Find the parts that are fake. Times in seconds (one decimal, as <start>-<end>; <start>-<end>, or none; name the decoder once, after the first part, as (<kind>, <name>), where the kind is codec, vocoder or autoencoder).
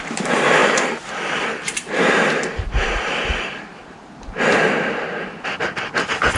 0.6-3.1 (vocoder, BigVGAN v2)